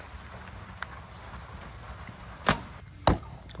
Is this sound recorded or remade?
recorded